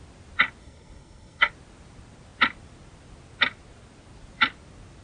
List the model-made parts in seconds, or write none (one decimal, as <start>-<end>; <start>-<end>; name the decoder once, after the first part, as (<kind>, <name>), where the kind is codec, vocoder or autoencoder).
0.6-1.5 (codec, SNAC)